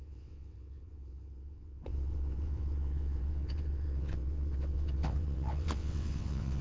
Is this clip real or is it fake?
fake